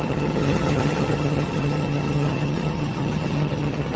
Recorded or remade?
remade